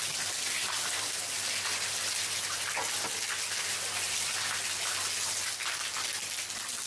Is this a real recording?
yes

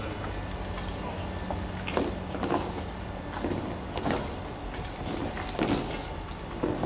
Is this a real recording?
yes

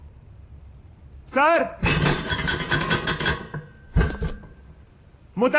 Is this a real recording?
no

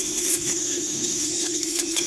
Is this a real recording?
no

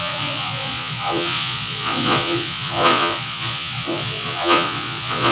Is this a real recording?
no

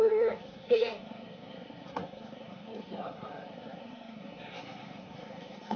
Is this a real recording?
no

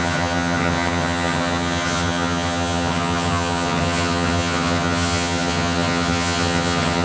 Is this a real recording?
no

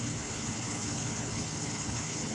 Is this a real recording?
no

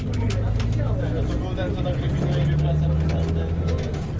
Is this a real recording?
yes